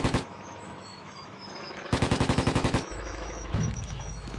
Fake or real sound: fake